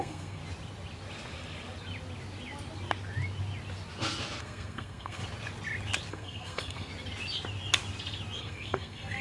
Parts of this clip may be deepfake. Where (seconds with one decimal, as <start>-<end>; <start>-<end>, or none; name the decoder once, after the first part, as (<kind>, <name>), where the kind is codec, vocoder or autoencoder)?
0.0-0.4 (codec, SNAC); 4.4-5.2; 6.1-6.9; 8.4-9.2